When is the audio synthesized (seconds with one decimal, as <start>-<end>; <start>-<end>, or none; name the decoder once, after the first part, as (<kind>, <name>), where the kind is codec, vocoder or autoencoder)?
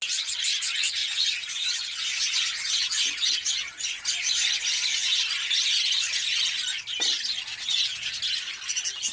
1.0-3.7 (vocoder, Vocos); 4.9-5.6; 7.5-8.1